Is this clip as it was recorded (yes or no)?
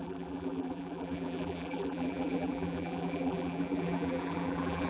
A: no